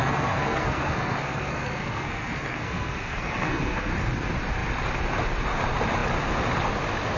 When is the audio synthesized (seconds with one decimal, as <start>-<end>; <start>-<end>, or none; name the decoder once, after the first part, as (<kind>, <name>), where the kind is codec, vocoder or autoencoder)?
0.0-3.9 (codec, SNAC)